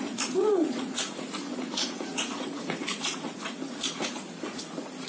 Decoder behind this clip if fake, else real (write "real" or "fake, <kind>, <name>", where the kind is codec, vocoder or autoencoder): fake, vocoder, Vocos